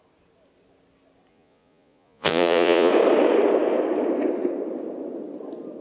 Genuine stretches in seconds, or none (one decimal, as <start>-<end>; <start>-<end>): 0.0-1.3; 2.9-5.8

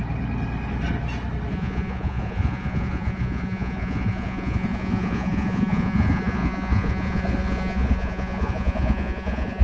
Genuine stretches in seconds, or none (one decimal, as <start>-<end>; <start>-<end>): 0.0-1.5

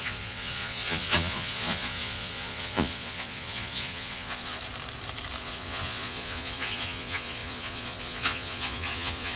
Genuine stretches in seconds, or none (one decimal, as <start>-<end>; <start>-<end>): 4.6-5.4